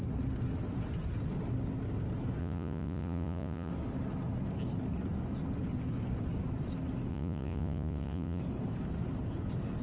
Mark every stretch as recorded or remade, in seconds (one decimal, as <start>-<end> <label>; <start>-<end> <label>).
0.0-2.4 recorded; 2.4-3.7 remade; 3.7-7.1 recorded; 7.1-8.4 remade; 8.4-9.8 recorded